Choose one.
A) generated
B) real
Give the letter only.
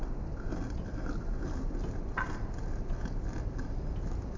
B